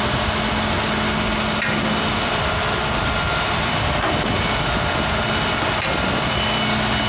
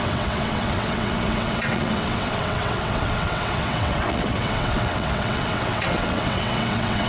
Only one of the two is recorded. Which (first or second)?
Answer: first